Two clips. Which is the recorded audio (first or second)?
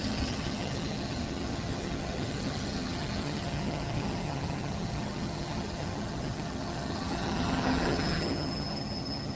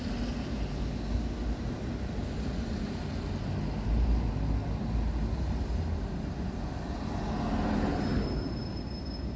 second